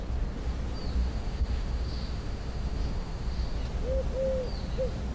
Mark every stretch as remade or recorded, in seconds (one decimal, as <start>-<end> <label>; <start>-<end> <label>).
0.0-1.0 recorded; 1.0-3.6 remade; 3.6-5.1 recorded